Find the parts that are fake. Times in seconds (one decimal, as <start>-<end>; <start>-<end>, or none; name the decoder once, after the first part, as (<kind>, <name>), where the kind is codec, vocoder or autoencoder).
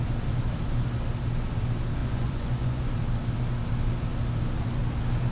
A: 2.0-2.9 (vocoder, Vocos)